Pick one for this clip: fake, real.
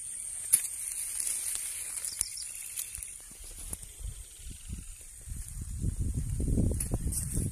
fake